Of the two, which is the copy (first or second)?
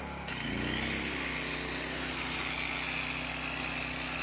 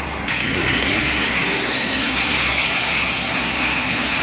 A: second